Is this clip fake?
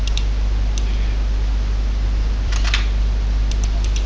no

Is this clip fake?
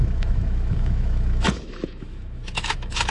yes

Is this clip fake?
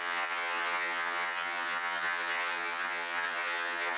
yes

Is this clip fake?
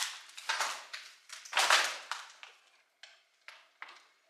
no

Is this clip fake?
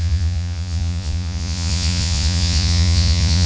yes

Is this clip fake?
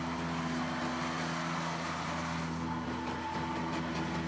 no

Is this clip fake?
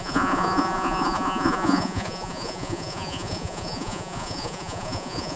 yes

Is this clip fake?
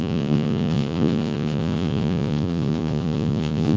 yes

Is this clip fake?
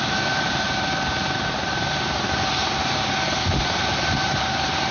yes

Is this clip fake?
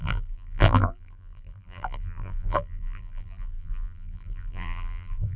yes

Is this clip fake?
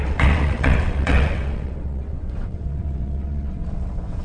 yes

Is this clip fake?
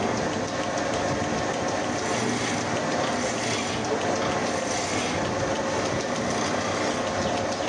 no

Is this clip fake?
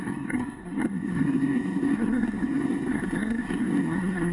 yes